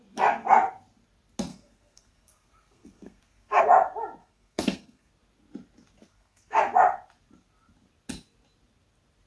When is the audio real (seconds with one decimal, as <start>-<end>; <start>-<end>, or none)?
0.0-1.5; 3.6-4.2; 5.1-6.0; 6.6-9.3